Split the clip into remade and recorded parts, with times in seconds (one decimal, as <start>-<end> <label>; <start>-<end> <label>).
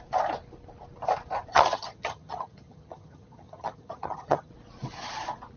0.0-1.5 recorded; 1.5-4.5 remade; 4.5-5.6 recorded